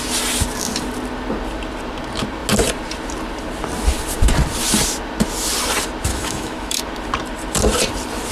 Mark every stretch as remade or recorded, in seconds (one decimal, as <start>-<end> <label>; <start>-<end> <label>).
0.0-6.1 recorded; 6.1-6.8 remade; 6.8-8.3 recorded